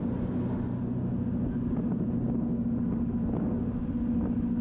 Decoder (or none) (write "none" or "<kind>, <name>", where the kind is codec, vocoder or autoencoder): none